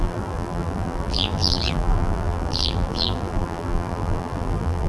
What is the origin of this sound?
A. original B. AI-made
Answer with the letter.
B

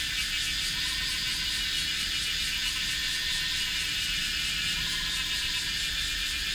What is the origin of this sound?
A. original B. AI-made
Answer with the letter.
A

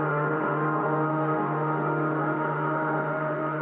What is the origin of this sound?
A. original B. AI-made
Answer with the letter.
B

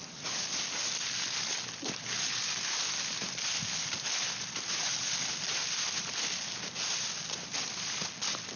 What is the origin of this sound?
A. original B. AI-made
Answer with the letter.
A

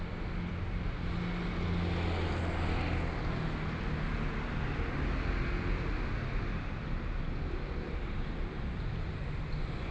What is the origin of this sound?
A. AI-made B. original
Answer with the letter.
B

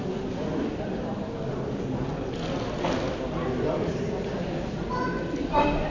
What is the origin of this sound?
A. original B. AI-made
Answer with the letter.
A